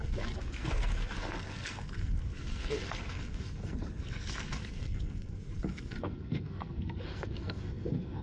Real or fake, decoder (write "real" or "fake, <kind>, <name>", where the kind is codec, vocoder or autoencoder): fake, codec, SNAC